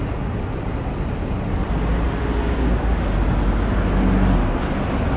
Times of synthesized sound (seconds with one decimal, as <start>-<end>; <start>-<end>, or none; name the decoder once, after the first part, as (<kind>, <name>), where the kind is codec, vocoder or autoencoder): 2.4-3.1 (codec, DAC)